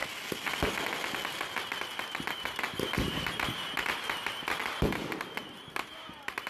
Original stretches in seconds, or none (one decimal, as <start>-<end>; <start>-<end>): 0.0-2.3; 4.6-5.4

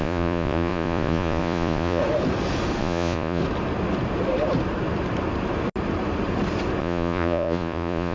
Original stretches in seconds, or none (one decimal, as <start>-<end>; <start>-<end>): 2.0-2.8; 3.4-6.8

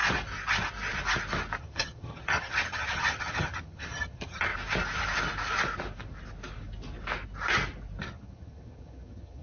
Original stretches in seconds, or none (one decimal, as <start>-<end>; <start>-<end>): 0.0-1.6; 4.5-8.0

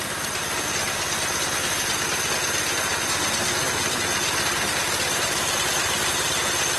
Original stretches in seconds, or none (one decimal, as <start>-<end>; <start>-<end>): 0.0-6.8

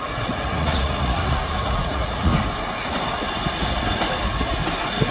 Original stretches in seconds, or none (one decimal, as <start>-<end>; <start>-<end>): 2.3-5.1